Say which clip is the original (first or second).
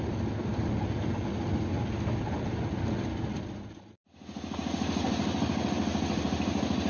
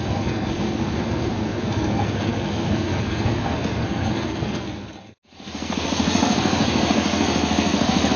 first